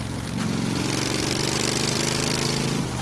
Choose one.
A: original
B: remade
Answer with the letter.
A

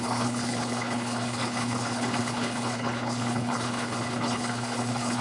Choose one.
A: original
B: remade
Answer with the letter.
B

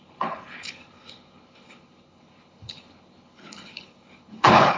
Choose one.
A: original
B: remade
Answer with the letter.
B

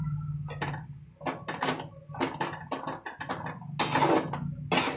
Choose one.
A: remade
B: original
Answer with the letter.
B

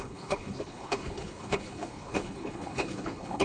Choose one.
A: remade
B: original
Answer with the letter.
A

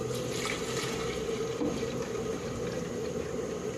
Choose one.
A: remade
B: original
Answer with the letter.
B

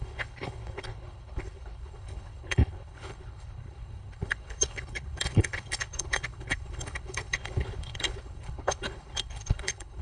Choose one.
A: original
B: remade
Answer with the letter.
B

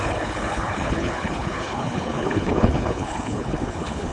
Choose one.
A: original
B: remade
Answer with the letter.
B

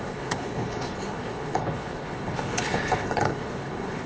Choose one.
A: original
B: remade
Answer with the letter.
B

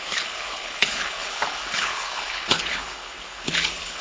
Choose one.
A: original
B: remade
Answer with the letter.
B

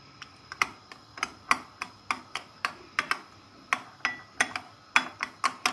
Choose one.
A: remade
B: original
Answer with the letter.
B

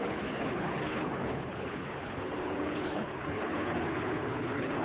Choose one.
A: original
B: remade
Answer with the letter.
B